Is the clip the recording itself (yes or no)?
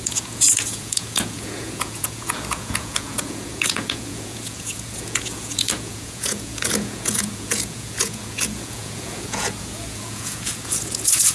no